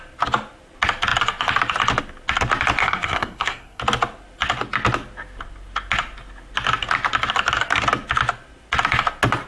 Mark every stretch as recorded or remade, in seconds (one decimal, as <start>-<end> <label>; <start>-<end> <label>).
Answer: 0.0-2.8 recorded; 2.8-3.8 remade; 3.8-9.5 recorded